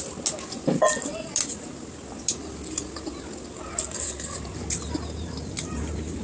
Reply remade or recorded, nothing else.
recorded